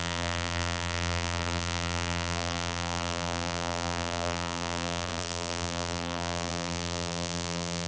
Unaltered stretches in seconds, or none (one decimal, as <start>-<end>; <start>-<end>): none